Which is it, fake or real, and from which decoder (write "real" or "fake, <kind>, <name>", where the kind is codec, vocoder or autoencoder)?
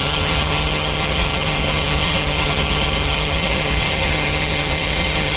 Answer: fake, vocoder, HiFi-GAN